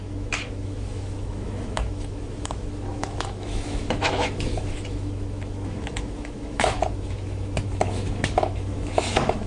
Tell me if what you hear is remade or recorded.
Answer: remade